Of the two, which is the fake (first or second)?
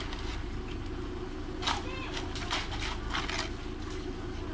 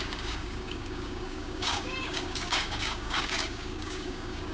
second